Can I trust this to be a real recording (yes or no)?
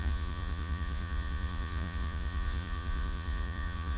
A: no